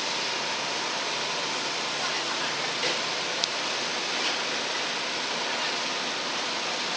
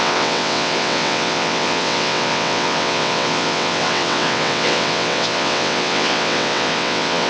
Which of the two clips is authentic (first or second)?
first